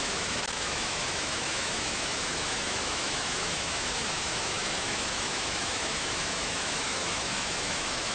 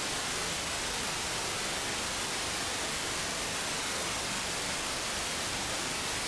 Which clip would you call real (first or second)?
second